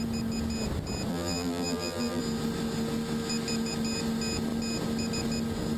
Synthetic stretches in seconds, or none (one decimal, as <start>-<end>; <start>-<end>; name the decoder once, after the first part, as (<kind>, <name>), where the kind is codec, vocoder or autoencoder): 1.1-2.2 (vocoder, BigVGAN v2)